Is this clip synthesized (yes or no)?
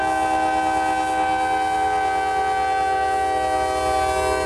no